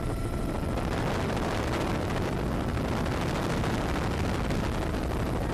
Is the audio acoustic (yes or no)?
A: yes